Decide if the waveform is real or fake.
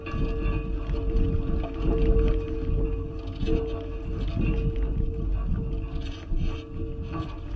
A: real